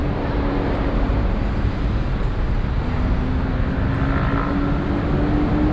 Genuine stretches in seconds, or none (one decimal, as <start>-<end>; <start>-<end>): 1.9-5.7